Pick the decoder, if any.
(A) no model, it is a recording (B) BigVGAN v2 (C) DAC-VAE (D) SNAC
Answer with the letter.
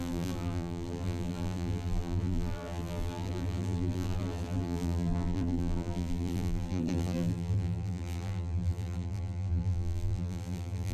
B